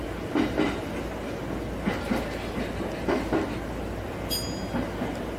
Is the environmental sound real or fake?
real